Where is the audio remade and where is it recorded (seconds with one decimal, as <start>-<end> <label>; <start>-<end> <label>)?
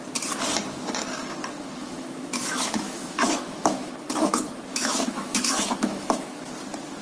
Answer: 0.0-1.8 recorded; 1.8-3.9 remade; 3.9-4.7 recorded; 4.7-6.5 remade; 6.5-7.0 recorded